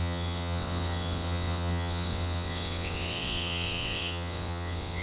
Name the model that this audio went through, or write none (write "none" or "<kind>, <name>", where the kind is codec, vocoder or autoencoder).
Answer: vocoder, WaveNeXt